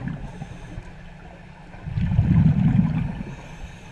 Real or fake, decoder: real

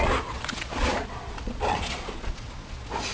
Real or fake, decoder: fake, vocoder, Vocos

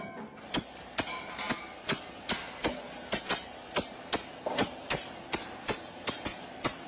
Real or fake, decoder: real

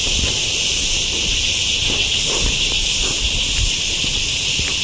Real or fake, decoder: real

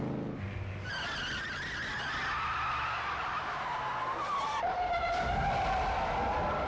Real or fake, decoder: real